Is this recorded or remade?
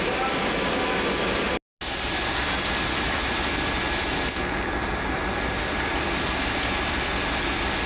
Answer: recorded